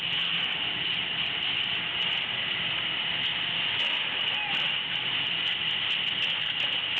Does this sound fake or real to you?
real